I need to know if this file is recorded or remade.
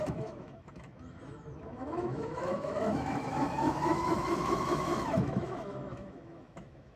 remade